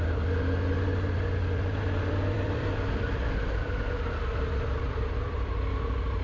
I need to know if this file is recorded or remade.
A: remade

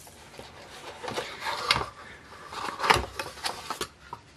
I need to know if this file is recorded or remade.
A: recorded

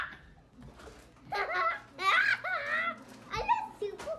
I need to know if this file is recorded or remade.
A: recorded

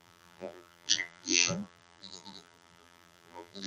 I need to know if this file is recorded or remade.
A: remade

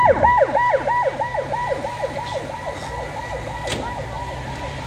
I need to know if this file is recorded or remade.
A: recorded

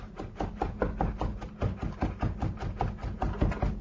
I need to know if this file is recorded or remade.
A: recorded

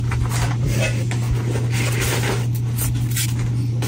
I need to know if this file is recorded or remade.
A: recorded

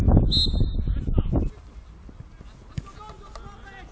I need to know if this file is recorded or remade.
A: recorded